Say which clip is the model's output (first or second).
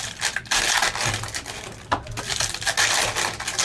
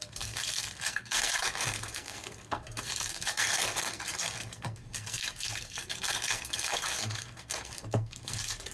second